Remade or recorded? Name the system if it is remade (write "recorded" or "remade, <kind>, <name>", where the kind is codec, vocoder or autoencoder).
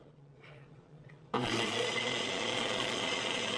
remade, vocoder, Vocos